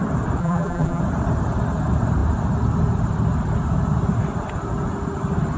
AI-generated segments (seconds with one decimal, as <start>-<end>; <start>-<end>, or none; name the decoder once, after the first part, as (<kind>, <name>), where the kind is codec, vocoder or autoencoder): 0.4-1.0 (vocoder, BigVGAN v2)